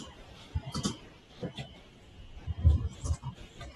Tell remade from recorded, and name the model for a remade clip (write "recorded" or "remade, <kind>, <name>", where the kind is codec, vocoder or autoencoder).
remade, vocoder, BigVGAN v2